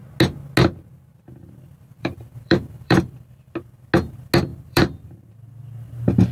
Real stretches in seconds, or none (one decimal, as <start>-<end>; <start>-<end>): 0.0-0.6; 3.5-4.5; 5.3-6.3